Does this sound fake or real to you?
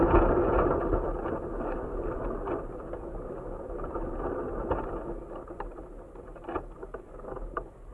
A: real